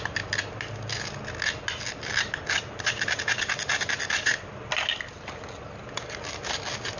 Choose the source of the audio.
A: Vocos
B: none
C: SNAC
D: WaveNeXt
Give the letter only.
B